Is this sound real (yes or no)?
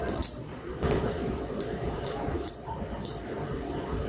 no